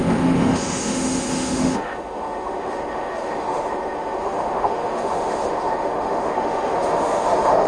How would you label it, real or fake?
fake